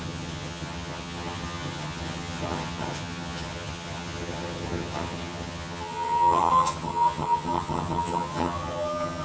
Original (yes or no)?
no